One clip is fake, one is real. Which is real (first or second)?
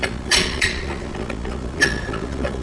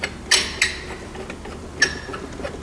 second